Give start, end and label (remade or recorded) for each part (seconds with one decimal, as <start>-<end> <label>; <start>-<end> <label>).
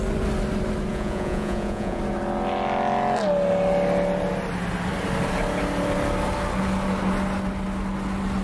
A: 0.0-0.9 recorded; 0.9-2.0 remade; 2.0-8.4 recorded